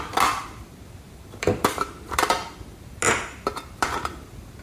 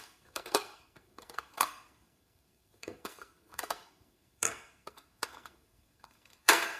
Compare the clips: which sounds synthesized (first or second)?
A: second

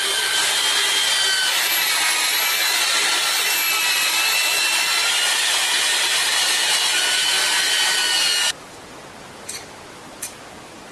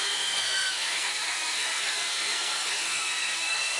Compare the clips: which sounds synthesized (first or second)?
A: second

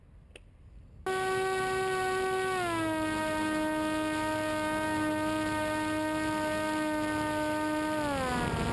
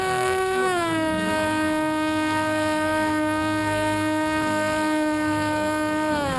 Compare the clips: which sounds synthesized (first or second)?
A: second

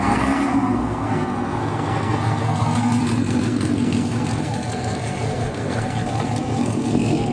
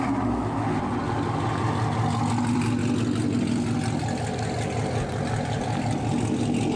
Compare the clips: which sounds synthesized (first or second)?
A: first